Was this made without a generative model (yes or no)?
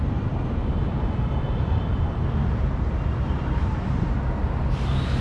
no